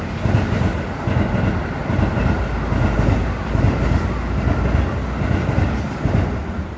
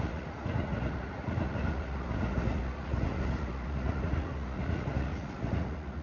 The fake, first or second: second